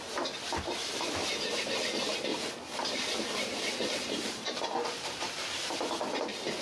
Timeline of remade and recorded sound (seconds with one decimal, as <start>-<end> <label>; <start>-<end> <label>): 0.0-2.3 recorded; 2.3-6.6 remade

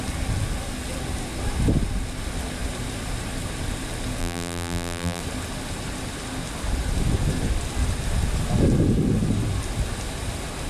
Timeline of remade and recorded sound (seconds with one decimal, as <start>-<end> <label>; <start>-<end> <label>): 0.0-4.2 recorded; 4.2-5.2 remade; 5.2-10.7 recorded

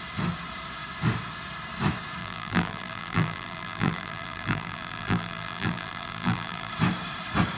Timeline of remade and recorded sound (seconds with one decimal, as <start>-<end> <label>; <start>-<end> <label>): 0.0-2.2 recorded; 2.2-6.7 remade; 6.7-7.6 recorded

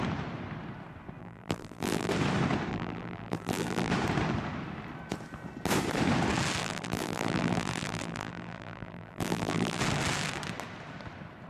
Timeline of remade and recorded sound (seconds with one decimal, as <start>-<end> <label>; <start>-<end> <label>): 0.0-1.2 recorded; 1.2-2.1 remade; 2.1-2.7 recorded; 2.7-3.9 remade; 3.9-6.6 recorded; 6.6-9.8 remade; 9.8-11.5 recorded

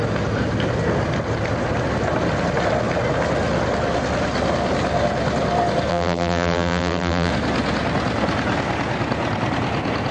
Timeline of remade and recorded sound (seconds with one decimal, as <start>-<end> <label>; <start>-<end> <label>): 0.0-5.9 recorded; 5.9-7.3 remade; 7.3-10.1 recorded

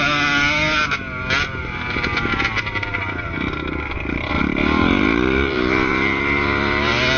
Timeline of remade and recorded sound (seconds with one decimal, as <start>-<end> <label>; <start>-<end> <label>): 0.0-1.6 recorded; 1.6-5.9 remade; 5.9-7.2 recorded

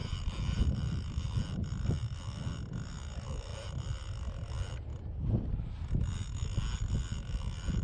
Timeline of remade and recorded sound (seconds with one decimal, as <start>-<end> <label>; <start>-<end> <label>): 0.0-1.4 remade; 1.4-3.5 recorded; 3.5-4.1 remade; 4.1-7.8 recorded